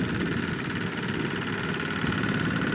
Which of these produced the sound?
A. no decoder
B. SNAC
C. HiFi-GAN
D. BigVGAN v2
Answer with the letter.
A